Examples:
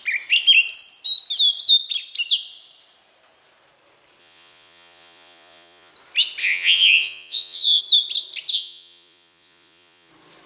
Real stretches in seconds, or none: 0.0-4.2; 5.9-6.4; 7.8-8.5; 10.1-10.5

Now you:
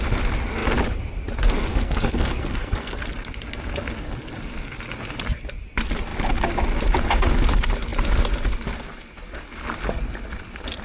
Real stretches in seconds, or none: 0.0-1.7; 3.0-10.8

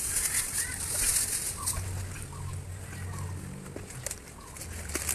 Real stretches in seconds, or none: 0.0-5.1

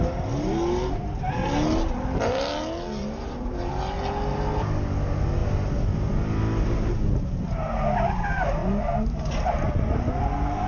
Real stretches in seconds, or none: 0.0-3.0; 3.7-10.7

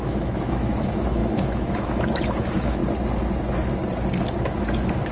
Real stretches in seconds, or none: 2.8-4.4

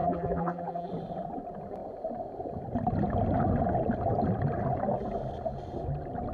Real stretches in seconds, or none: 0.9-6.3

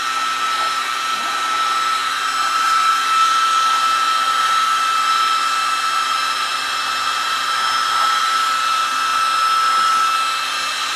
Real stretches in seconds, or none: 9.1-10.4

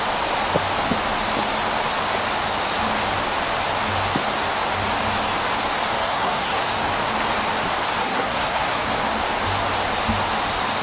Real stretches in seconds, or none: 0.0-6.0; 6.6-8.0; 8.8-10.8